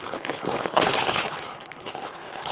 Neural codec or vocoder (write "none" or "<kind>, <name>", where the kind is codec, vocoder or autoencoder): codec, HILCodec